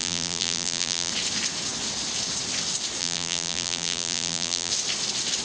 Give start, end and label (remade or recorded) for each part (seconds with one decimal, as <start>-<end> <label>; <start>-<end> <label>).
0.0-1.1 remade; 1.1-3.0 recorded; 3.0-4.7 remade; 4.7-5.4 recorded